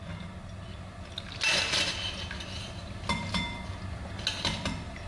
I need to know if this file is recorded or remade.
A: recorded